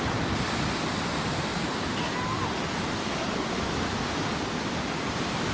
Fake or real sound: real